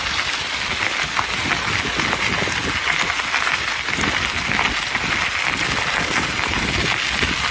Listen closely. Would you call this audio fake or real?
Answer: real